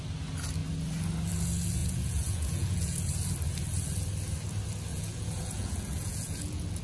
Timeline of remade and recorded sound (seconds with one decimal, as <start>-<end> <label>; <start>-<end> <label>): 0.0-1.8 recorded; 1.8-3.1 remade; 3.1-4.9 recorded; 4.9-6.8 remade